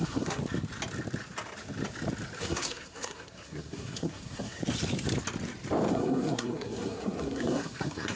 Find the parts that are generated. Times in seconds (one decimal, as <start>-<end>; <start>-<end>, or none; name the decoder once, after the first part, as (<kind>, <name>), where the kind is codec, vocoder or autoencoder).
0.0-0.4 (codec, SNAC); 2.4-4.6; 5.9-8.2